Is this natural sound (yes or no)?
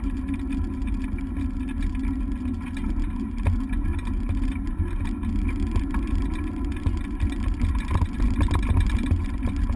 yes